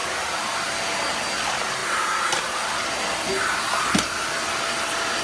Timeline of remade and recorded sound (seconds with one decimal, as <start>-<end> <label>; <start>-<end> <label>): 0.0-5.2 recorded